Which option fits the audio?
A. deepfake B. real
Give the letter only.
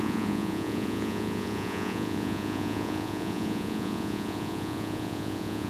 A